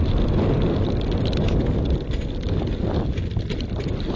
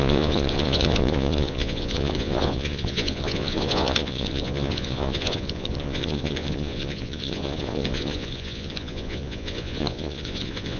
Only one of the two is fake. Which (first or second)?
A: second